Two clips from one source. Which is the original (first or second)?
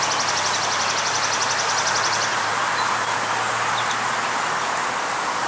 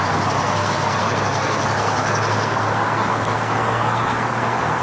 first